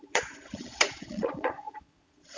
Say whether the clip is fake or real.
fake